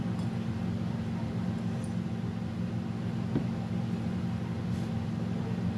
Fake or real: real